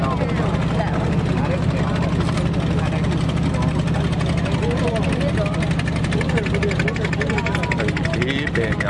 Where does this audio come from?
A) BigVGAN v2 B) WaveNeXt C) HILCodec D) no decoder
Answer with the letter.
D